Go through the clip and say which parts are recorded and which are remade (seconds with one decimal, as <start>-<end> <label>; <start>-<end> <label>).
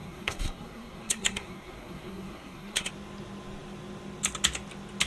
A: 0.0-2.9 remade; 2.9-5.1 recorded